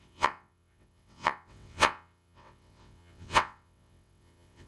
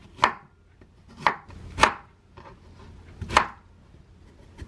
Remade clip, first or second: first